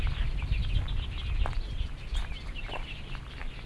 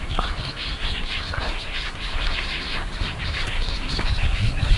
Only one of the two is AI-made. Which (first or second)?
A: second